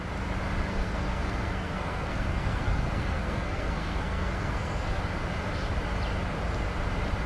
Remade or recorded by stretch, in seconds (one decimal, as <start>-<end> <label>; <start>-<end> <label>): 0.0-0.7 recorded; 0.7-5.0 remade; 5.0-7.3 recorded